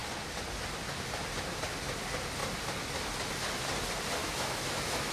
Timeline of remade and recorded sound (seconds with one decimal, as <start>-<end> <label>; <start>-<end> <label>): 0.0-4.2 recorded; 4.2-5.1 remade